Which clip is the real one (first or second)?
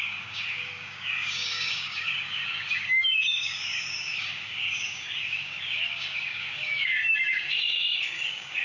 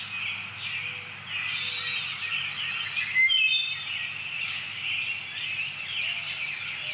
second